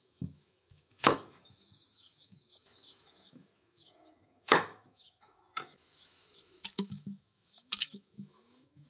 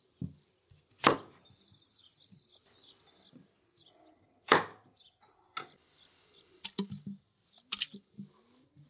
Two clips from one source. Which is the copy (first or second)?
first